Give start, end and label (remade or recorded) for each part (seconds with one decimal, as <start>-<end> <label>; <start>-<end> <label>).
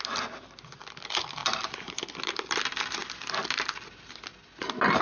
0.0-5.0 recorded